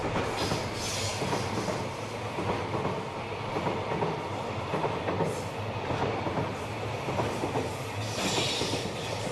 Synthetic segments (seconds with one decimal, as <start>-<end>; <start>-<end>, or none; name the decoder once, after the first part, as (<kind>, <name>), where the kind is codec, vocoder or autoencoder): none